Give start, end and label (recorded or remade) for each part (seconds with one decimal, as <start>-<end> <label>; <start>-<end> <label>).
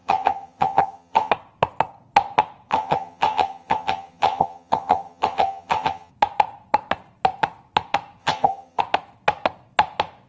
0.0-1.3 remade; 1.3-2.7 recorded; 2.7-6.1 remade; 6.1-8.2 recorded; 8.2-8.8 remade; 8.8-10.3 recorded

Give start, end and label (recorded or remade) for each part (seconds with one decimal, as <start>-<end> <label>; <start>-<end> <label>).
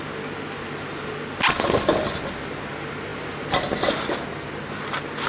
0.0-5.3 recorded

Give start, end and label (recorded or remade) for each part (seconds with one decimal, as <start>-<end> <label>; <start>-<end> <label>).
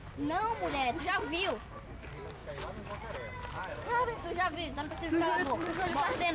0.0-6.3 recorded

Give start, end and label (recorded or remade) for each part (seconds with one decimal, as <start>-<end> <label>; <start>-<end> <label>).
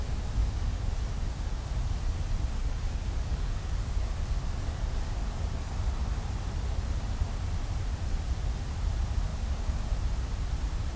0.0-0.4 recorded; 0.4-1.7 remade; 1.7-2.6 recorded; 2.6-5.7 remade; 5.7-9.3 recorded; 9.3-9.9 remade; 9.9-11.0 recorded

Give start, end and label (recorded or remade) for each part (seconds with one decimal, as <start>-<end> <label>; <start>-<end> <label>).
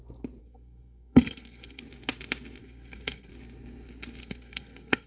0.0-0.4 recorded; 0.4-1.8 remade; 1.8-2.6 recorded; 2.6-3.3 remade; 3.3-4.2 recorded; 4.2-5.1 remade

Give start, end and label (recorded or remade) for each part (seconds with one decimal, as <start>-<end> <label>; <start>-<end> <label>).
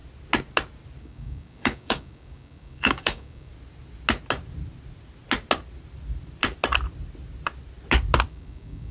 0.0-1.0 recorded; 1.0-3.5 remade; 3.5-8.3 recorded; 8.3-8.9 remade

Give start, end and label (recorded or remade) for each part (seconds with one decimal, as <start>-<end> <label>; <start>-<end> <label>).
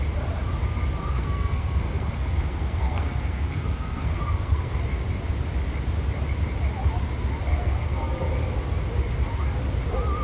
0.0-1.0 recorded; 1.0-4.8 remade; 4.8-7.5 recorded; 7.5-8.1 remade; 8.1-10.2 recorded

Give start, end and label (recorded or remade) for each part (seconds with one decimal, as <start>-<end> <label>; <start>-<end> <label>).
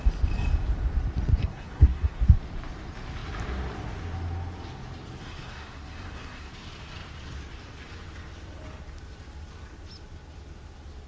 0.0-1.4 recorded; 1.4-2.2 remade; 2.2-5.2 recorded; 5.2-6.5 remade; 6.5-11.1 recorded